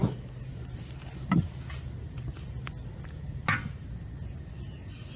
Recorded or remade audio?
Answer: recorded